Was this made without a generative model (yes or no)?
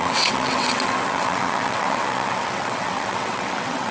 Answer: no